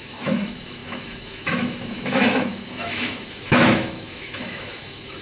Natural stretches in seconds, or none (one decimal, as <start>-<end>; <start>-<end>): none